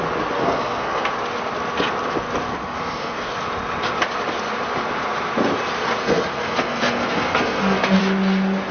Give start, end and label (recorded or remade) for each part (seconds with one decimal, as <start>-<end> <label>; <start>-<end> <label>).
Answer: 0.0-0.4 recorded; 0.4-1.1 remade; 1.1-2.5 recorded; 2.5-3.3 remade; 3.3-6.0 recorded; 6.0-8.0 remade; 8.0-8.7 recorded